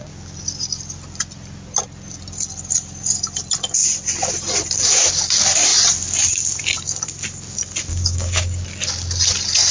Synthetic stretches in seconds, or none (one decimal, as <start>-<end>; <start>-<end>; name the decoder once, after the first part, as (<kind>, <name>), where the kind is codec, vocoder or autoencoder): 7.9-8.6 (codec, DAC)